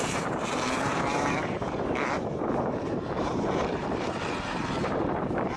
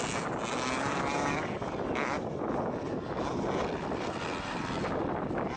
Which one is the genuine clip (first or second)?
second